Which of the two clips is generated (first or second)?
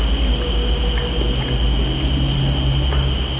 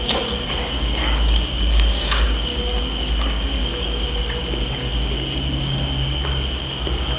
second